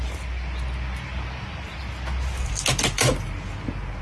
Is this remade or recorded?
recorded